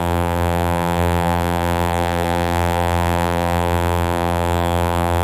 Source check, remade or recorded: remade